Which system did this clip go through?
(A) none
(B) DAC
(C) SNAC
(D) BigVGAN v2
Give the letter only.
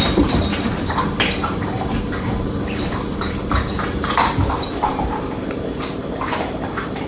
D